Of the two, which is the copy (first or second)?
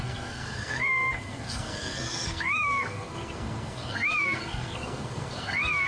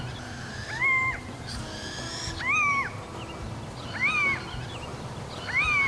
first